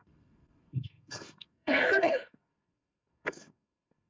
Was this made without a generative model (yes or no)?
no